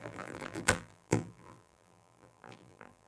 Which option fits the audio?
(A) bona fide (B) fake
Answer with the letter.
B